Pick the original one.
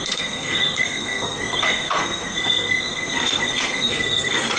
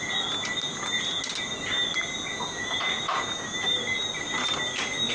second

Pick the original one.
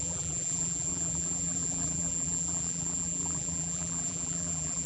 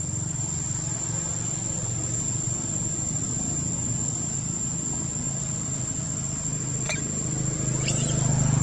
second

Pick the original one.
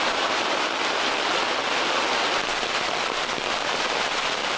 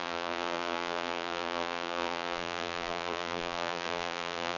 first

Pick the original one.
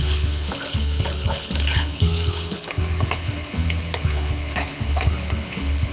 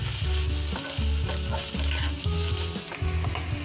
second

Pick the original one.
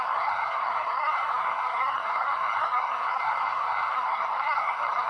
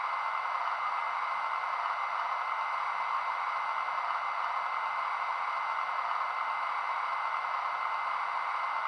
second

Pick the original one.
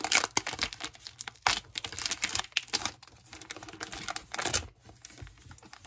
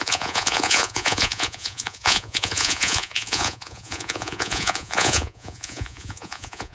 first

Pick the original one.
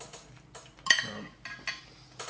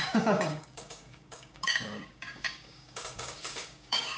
first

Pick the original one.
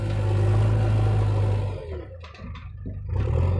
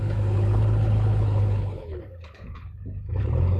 first